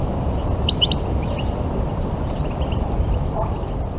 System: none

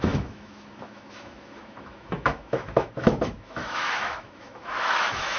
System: autoencoder, DAC-VAE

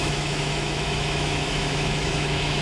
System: autoencoder, DAC-VAE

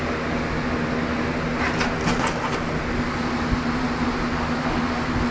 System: none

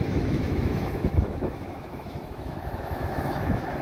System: autoencoder, DAC-VAE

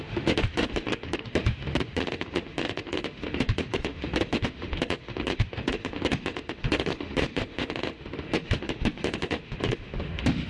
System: autoencoder, DAC-VAE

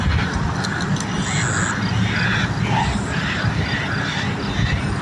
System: none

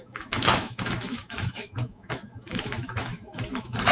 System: autoencoder, DAC-VAE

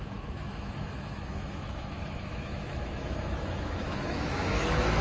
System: autoencoder, DAC-VAE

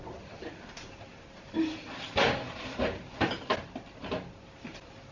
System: none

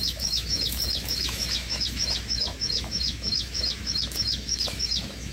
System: autoencoder, DAC-VAE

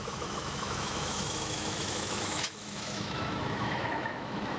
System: autoencoder, DAC-VAE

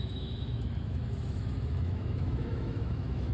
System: autoencoder, DAC-VAE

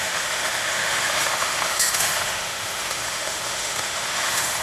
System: autoencoder, DAC-VAE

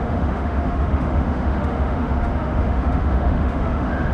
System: autoencoder, DAC-VAE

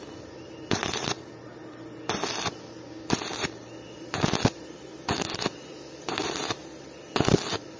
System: none